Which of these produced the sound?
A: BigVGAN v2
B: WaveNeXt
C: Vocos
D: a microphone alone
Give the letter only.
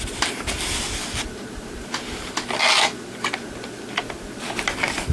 D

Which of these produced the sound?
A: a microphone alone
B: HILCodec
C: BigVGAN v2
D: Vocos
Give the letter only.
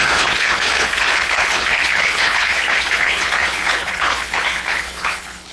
B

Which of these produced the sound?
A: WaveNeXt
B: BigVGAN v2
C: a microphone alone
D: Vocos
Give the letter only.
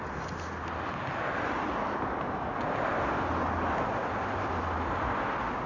C